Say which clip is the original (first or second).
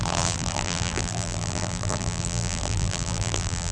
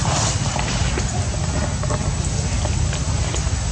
second